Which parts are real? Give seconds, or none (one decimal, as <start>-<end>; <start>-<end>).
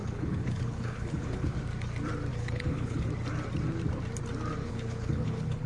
1.6-2.3; 3.1-4.6